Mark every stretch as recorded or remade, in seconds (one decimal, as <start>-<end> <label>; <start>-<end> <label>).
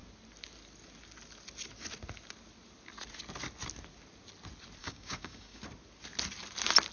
0.0-4.8 recorded; 4.8-5.6 remade; 5.6-6.9 recorded